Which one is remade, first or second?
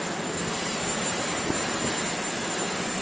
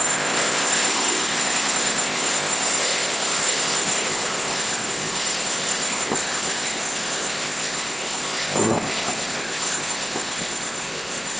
second